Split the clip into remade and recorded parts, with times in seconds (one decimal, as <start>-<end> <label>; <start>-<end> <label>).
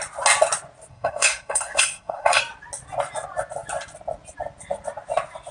0.0-0.9 recorded; 0.9-2.4 remade; 2.4-5.5 recorded